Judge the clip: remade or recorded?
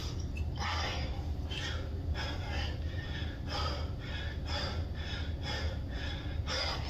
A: recorded